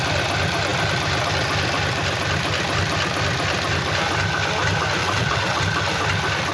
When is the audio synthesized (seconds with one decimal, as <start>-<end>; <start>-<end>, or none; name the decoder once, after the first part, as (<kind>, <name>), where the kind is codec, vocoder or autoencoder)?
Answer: 5.0-5.6 (vocoder, WaveNeXt)